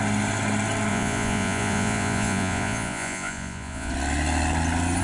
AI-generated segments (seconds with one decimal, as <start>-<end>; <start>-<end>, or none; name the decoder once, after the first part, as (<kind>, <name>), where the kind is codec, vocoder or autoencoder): 0.9-3.9 (vocoder, Vocos)